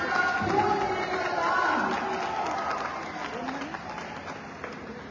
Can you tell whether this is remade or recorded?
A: recorded